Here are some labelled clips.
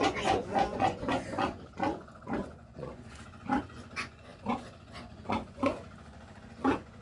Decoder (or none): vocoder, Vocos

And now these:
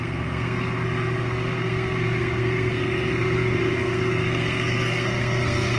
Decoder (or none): codec, SNAC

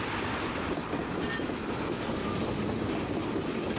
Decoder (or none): none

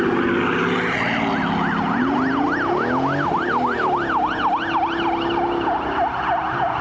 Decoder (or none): none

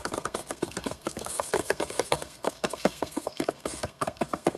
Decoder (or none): codec, SNAC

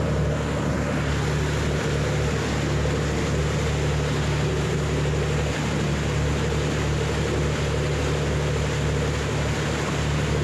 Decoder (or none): none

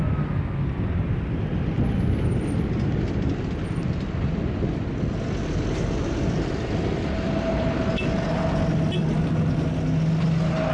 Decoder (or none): none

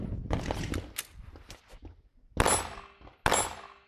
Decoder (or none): none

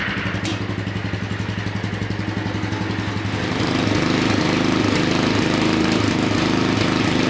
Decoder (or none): none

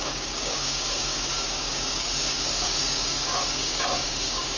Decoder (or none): codec, DAC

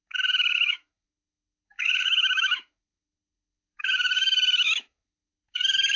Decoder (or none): autoencoder, DAC-VAE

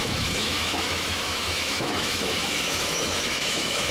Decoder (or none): autoencoder, DAC-VAE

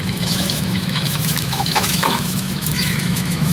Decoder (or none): autoencoder, DAC-VAE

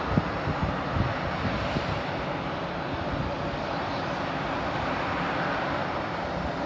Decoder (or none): none